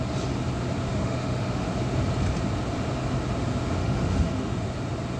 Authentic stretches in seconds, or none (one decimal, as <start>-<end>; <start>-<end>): 0.0-0.9; 1.7-3.8; 4.7-5.2